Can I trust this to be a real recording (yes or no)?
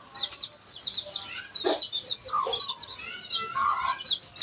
yes